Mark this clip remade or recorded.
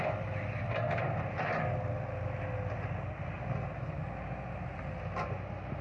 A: recorded